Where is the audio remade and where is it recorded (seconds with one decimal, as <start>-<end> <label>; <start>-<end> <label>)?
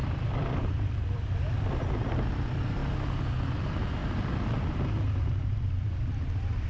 0.0-2.8 remade; 2.8-3.6 recorded; 3.6-4.0 remade; 4.0-4.6 recorded; 4.6-6.7 remade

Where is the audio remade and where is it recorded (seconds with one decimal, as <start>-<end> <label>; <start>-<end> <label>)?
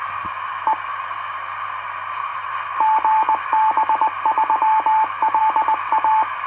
0.0-6.5 recorded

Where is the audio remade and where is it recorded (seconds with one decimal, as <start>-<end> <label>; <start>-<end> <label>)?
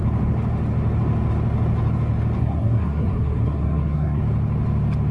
0.0-2.4 recorded; 2.4-4.2 remade; 4.2-5.1 recorded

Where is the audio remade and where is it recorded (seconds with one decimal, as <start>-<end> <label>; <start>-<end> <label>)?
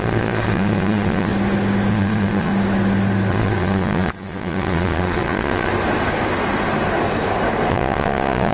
0.0-1.3 remade; 1.3-1.9 recorded; 1.9-2.5 remade; 2.5-3.3 recorded; 3.3-5.7 remade; 5.7-7.7 recorded; 7.7-8.5 remade